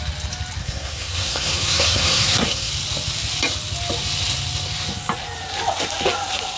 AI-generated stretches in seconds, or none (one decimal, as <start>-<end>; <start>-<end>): 0.6-2.7